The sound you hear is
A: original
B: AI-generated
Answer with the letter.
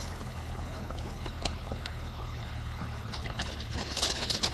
B